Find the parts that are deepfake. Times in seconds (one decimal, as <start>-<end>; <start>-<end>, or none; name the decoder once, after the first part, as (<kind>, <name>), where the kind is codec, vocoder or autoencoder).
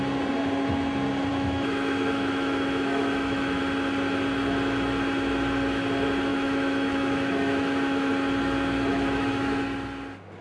1.3-3.6 (autoencoder, DAC-VAE); 6.3-8.1; 8.9-9.6